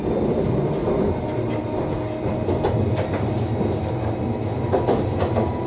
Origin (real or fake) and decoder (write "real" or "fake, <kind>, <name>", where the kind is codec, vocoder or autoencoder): real